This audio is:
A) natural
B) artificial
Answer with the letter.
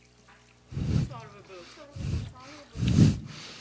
A